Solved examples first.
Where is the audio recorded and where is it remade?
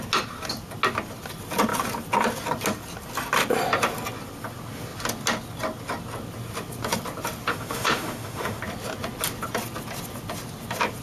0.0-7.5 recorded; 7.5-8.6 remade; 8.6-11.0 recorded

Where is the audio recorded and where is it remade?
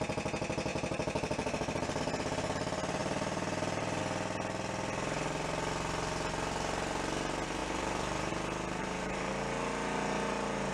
0.0-0.7 recorded; 0.7-2.0 remade; 2.0-3.0 recorded; 3.0-4.0 remade; 4.0-7.6 recorded; 7.6-8.3 remade; 8.3-8.8 recorded; 8.8-9.3 remade; 9.3-10.7 recorded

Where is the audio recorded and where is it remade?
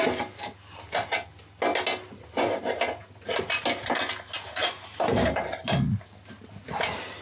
0.0-4.6 recorded; 4.6-5.6 remade; 5.6-7.2 recorded